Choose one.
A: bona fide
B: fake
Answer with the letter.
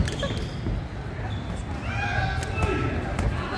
A